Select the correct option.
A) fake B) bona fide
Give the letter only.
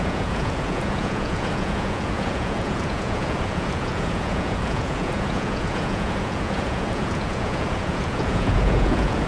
A